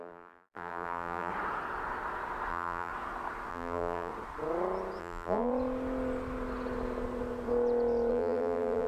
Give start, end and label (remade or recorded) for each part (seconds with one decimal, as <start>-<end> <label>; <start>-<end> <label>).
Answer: 0.0-1.3 remade; 1.3-2.5 recorded; 2.5-2.9 remade; 2.9-3.5 recorded; 3.5-4.1 remade; 4.1-5.0 recorded; 5.0-5.5 remade; 5.5-8.1 recorded; 8.1-8.9 remade